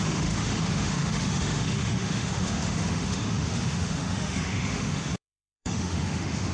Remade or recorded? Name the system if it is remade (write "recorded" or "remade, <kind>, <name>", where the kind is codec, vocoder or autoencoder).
remade, autoencoder, DAC-VAE